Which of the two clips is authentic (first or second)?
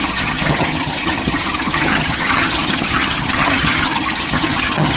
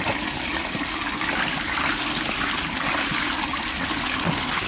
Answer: second